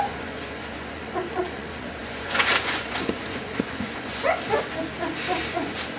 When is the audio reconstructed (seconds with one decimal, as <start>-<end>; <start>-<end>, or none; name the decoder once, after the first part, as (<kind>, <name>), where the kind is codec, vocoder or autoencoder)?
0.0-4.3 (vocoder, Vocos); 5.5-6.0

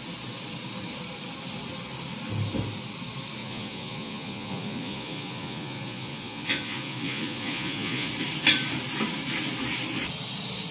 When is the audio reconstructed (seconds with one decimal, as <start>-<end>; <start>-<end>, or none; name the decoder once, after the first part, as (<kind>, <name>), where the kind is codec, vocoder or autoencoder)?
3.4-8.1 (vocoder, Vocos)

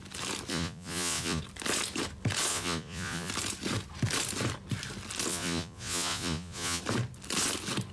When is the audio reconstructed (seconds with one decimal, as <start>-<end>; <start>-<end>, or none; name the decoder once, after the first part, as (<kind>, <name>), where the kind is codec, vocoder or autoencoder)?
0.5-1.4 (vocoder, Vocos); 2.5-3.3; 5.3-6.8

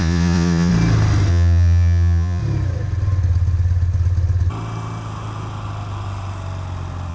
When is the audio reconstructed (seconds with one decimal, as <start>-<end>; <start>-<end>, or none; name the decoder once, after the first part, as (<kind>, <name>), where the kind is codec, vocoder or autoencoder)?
0.0-0.7 (vocoder, Vocos); 1.3-2.4

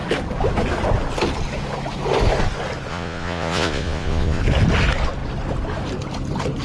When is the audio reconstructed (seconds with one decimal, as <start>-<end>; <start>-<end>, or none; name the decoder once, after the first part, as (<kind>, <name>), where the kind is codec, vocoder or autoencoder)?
2.9-4.4 (vocoder, Vocos)

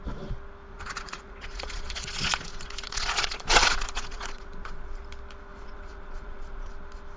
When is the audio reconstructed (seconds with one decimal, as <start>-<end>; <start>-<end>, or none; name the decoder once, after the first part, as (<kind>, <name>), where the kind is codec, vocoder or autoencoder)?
0.7-5.0 (vocoder, Vocos); 5.5-6.7

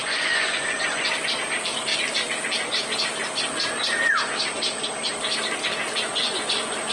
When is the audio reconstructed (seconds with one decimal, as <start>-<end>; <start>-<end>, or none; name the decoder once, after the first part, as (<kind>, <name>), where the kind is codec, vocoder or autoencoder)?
0.0-1.1 (vocoder, Vocos); 6.1-6.9